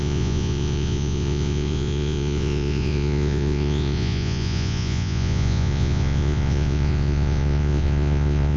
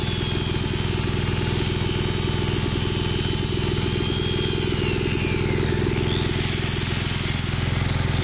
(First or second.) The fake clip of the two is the first